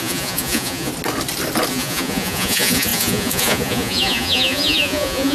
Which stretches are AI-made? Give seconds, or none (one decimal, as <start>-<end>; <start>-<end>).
0.0-0.9; 1.7-5.3